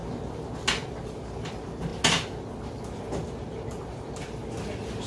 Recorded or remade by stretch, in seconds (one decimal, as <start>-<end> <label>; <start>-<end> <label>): 0.0-5.1 recorded